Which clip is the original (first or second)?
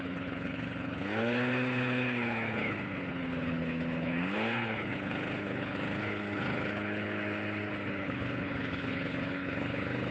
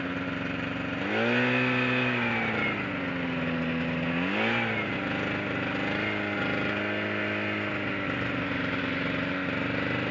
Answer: second